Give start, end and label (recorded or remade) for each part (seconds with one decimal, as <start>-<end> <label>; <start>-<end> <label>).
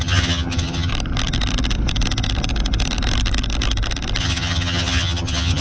0.0-0.9 remade; 0.9-4.2 recorded; 4.2-5.6 remade